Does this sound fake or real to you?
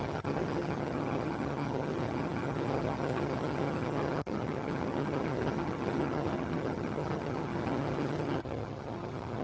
fake